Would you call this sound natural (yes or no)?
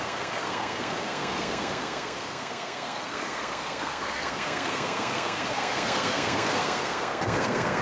no